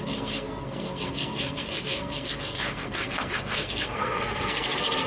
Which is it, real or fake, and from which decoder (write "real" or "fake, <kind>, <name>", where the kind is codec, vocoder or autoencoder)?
fake, codec, SNAC